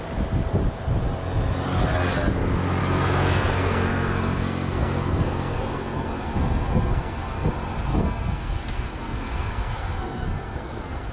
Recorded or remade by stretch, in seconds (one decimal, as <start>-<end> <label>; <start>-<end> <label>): 0.0-2.8 recorded; 2.8-7.5 remade; 7.5-7.9 recorded; 7.9-11.1 remade